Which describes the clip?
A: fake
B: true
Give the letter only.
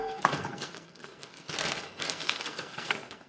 A